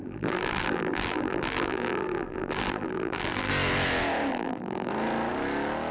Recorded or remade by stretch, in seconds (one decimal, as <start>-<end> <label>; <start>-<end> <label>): 0.0-3.5 remade; 3.5-4.3 recorded; 4.3-4.9 remade; 4.9-5.9 recorded